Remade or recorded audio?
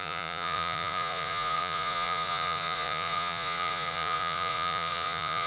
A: remade